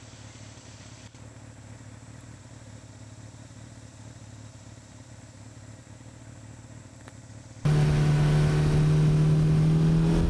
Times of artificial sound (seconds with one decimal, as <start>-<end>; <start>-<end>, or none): none